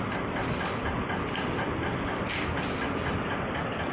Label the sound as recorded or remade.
remade